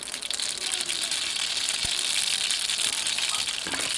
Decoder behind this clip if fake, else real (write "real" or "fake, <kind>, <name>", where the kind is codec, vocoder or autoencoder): real